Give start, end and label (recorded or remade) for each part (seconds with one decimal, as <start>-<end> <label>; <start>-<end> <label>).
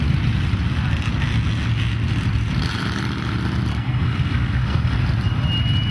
0.0-3.7 recorded; 3.7-5.0 remade; 5.0-5.9 recorded